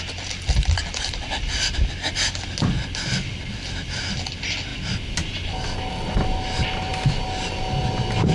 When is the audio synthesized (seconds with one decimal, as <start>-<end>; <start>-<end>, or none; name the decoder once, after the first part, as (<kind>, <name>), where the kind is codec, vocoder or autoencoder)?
none